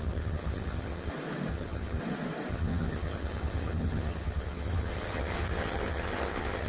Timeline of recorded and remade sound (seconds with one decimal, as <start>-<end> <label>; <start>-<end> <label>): 0.0-1.1 remade; 1.1-1.5 recorded; 1.5-2.0 remade; 2.0-2.5 recorded; 2.5-6.7 remade